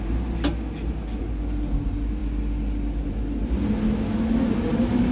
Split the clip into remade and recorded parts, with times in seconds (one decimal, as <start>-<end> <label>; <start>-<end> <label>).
0.0-5.1 recorded